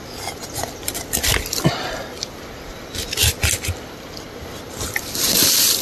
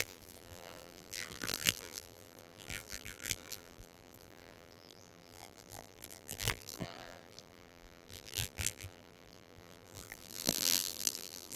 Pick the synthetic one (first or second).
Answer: second